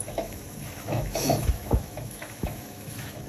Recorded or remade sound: remade